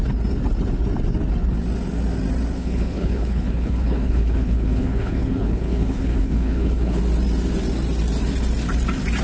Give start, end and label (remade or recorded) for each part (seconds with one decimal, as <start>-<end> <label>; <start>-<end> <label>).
0.0-2.6 recorded; 2.6-7.0 remade; 7.0-9.2 recorded